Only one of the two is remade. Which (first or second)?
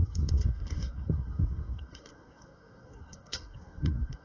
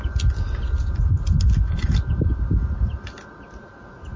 first